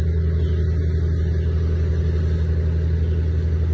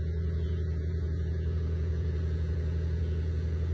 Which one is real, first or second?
first